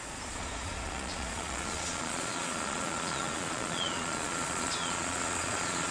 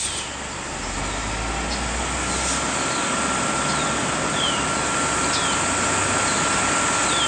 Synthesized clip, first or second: first